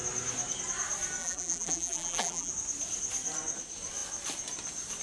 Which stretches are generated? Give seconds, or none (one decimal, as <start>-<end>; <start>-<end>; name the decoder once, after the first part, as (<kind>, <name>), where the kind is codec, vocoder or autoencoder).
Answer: 1.2-2.5 (vocoder, BigVGAN v2)